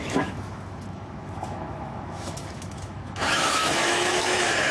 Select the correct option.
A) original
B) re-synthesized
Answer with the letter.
B